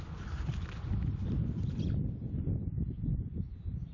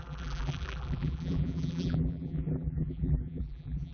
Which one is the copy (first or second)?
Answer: second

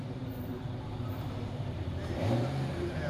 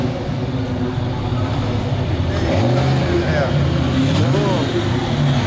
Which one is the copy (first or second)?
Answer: first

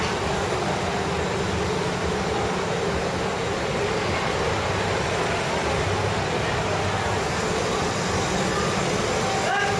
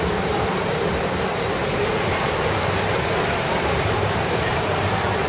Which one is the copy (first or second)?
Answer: second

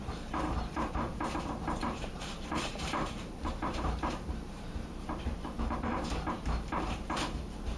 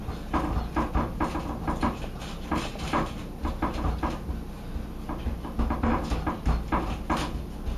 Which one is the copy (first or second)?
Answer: first